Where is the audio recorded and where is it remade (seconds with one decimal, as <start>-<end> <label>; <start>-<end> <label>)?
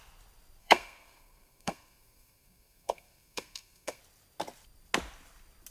0.0-0.6 recorded; 0.6-4.0 remade; 4.0-5.7 recorded